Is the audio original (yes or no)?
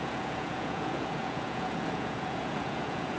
no